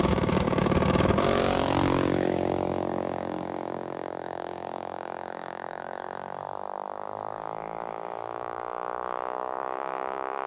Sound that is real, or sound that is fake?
fake